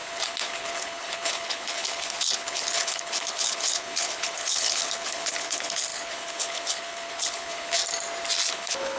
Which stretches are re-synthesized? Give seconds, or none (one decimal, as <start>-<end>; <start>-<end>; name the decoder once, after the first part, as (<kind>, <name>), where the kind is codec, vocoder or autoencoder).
0.0-7.8 (codec, HILCodec); 8.5-9.0